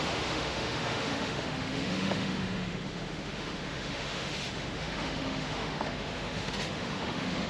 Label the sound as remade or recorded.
remade